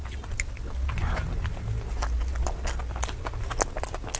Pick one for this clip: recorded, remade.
recorded